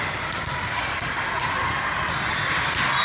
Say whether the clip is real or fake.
real